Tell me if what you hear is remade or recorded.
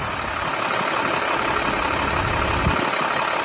recorded